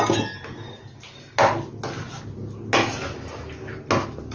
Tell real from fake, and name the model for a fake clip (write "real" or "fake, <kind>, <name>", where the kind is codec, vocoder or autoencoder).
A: real